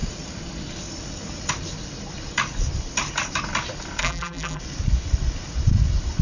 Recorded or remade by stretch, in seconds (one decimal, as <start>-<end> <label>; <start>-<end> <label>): 0.0-4.0 recorded; 4.0-4.6 remade; 4.6-6.2 recorded